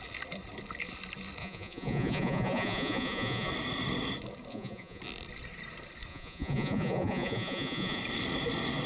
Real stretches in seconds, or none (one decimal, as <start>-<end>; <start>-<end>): 0.0-1.4; 3.5-4.5; 5.0-6.1; 8.0-8.9